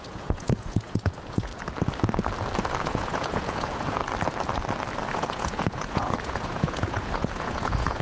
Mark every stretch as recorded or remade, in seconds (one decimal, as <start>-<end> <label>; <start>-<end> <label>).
0.0-1.5 remade; 1.5-2.8 recorded; 2.8-4.0 remade; 4.0-5.0 recorded; 5.0-8.0 remade